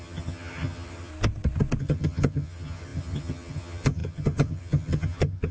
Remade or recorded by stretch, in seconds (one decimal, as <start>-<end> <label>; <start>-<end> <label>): 0.0-1.1 remade; 1.1-1.8 recorded; 1.8-5.5 remade